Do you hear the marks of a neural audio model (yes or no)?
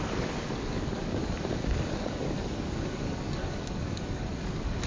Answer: yes